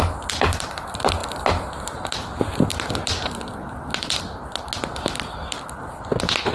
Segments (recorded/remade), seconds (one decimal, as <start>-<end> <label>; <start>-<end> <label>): 0.0-6.5 recorded